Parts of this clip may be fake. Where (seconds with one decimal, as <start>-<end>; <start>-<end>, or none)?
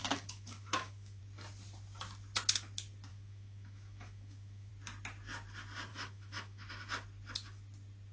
0.0-1.2; 3.1-4.7; 5.9-6.7